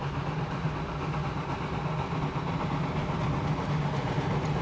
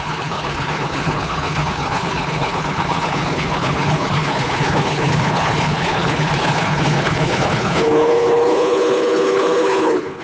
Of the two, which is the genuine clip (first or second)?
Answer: first